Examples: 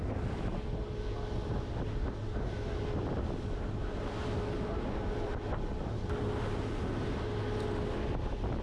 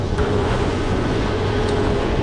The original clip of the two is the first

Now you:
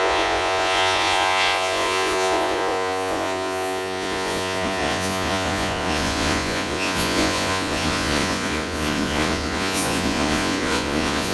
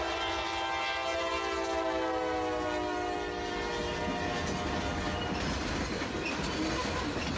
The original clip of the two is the second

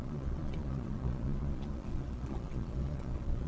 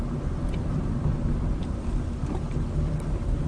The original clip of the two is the second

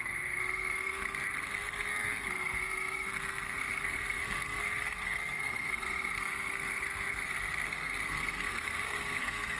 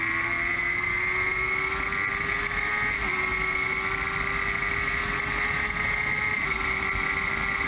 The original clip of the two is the second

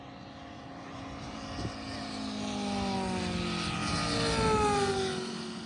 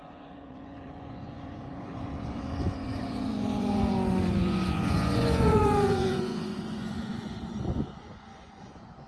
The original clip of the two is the first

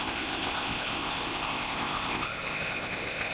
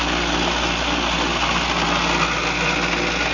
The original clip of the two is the second